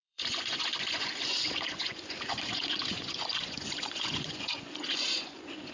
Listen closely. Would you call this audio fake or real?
fake